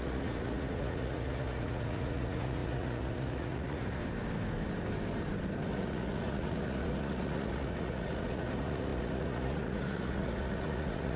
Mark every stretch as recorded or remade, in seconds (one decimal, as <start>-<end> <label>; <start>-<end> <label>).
0.0-4.0 remade; 4.0-5.7 recorded; 5.7-11.2 remade